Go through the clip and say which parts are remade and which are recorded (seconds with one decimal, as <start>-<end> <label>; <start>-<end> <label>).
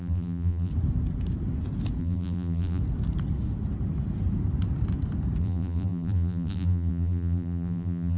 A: 0.0-0.7 remade; 0.7-2.0 recorded; 2.0-2.8 remade; 2.8-5.4 recorded; 5.4-8.2 remade